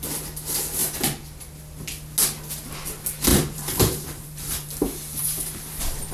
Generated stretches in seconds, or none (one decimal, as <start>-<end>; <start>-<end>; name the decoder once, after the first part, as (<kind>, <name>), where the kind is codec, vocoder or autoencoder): 3.3-4.7 (vocoder, BigVGAN v2); 5.2-6.1